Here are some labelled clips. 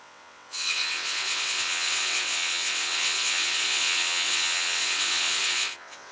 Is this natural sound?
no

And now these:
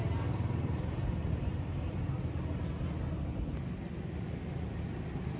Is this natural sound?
yes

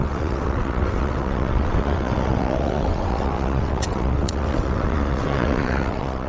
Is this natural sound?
no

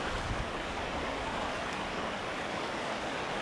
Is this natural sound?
no